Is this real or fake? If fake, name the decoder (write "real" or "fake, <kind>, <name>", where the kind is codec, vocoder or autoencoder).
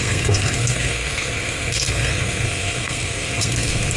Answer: fake, codec, SNAC